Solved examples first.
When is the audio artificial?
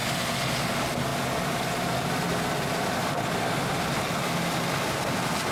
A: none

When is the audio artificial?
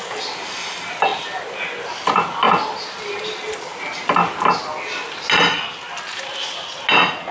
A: none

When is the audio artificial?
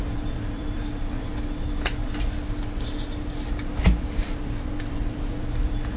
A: 0.0-1.3 (vocoder, BigVGAN v2); 4.2-6.0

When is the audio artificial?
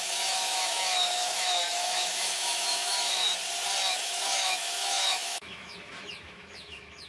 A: 0.0-3.3 (autoencoder, DAC-VAE); 3.9-7.1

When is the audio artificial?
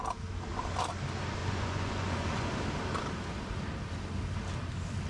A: 1.4-2.5 (vocoder, Vocos)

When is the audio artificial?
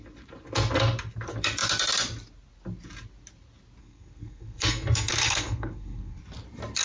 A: 3.8-6.2 (codec, SNAC)